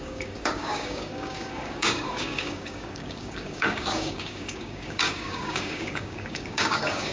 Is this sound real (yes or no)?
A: no